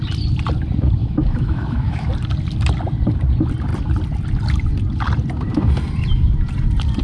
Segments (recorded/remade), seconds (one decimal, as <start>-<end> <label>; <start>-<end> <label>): 0.0-1.0 recorded; 1.0-2.1 remade; 2.1-7.0 recorded